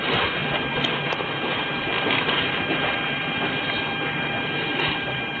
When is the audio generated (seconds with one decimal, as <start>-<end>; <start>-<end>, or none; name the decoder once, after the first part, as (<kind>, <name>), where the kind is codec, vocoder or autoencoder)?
none